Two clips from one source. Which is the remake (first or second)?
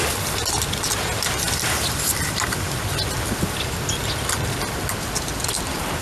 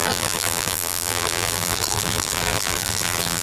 second